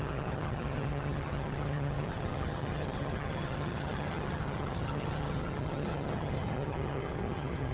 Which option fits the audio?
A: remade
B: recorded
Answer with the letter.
A